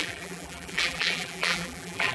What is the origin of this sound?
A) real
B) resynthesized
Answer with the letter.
B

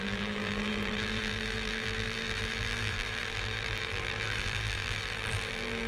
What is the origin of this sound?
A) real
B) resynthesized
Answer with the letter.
B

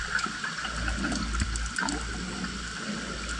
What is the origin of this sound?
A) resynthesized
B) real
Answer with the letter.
B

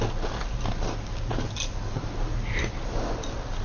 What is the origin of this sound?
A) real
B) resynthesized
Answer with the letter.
A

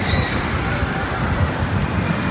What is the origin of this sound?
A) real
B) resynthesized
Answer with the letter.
B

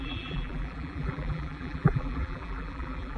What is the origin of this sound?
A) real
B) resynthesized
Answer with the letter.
B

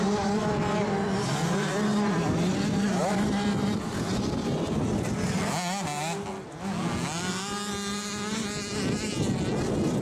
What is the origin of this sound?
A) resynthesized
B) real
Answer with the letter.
B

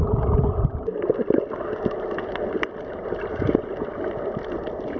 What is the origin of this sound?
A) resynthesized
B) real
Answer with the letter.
B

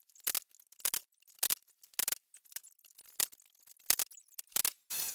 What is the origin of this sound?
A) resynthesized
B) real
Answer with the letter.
B